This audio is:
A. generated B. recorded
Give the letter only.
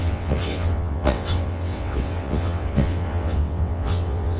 A